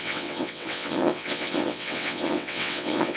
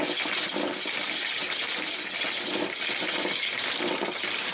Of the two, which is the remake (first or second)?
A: first